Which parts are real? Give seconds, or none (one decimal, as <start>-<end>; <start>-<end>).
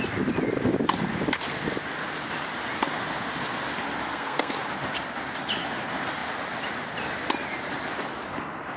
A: 0.0-4.1; 4.6-8.8